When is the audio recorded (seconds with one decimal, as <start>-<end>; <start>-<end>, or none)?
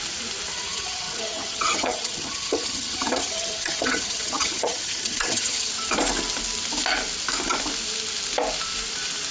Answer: 0.0-0.5; 5.7-9.3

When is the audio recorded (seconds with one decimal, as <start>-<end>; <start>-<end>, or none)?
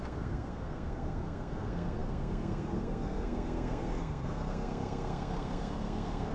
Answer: none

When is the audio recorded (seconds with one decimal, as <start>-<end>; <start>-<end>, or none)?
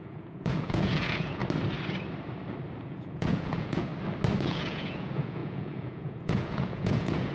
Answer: 1.4-2.8; 3.9-4.4